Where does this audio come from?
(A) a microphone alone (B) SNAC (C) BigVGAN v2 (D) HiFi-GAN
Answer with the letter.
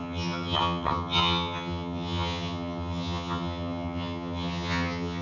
D